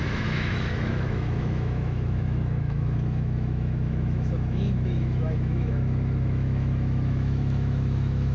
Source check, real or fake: fake